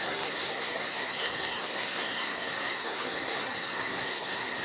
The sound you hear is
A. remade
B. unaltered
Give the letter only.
A